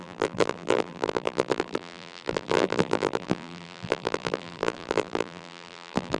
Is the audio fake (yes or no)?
yes